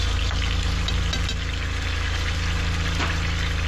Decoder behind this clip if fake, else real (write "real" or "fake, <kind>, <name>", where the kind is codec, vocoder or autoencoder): real